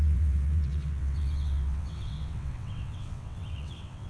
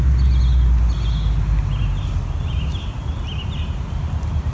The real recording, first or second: second